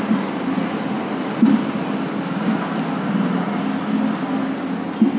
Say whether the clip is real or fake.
real